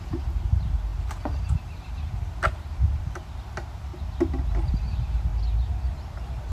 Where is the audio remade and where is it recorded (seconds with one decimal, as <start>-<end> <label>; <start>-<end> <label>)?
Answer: 0.0-3.9 remade; 3.9-4.7 recorded; 4.7-5.3 remade; 5.3-5.9 recorded; 5.9-6.5 remade